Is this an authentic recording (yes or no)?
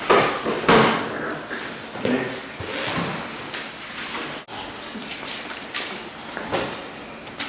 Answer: yes